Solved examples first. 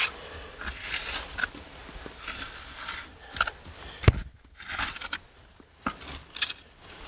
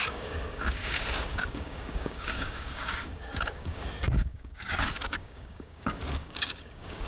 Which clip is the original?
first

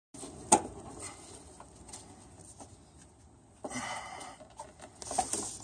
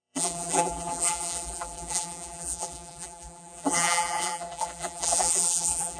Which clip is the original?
first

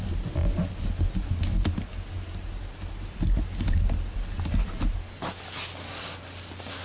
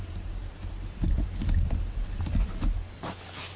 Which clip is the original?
first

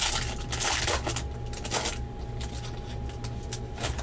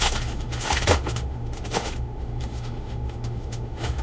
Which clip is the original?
first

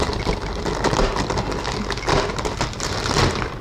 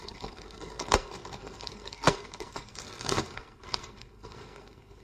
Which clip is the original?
first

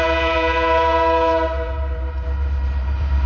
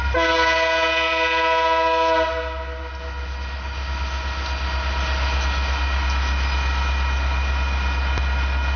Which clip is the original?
second